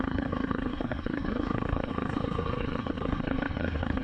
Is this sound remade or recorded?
remade